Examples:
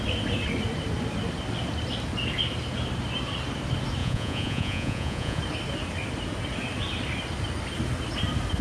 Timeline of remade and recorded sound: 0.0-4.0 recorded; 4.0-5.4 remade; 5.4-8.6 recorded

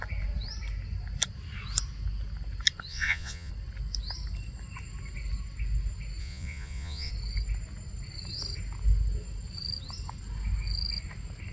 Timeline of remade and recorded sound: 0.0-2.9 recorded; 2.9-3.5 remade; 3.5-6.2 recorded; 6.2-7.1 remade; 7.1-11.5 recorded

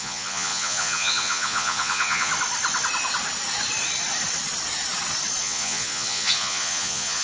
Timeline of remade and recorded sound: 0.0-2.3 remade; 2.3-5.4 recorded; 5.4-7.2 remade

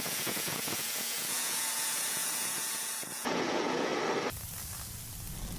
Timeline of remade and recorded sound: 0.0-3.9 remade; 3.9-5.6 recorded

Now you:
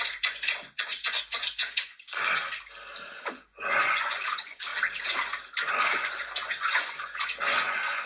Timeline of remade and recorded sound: 0.0-2.4 remade; 2.4-3.1 recorded; 3.1-4.7 remade; 4.7-5.8 recorded; 5.8-8.1 remade

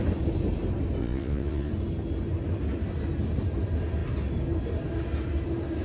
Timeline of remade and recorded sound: 0.0-1.0 recorded; 1.0-1.7 remade; 1.7-5.8 recorded